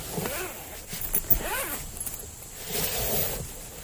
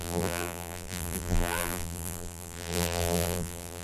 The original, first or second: first